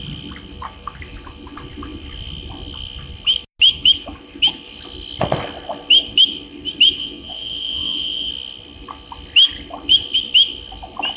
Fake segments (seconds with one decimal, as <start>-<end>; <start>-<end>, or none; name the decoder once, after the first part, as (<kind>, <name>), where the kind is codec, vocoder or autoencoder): 7.0-8.3 (vocoder, WaveNeXt)